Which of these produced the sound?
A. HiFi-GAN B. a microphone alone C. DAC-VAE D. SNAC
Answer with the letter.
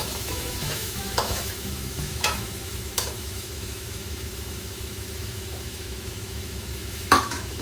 C